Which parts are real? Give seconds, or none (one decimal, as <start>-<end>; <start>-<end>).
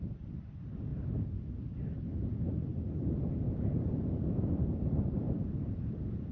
0.0-6.3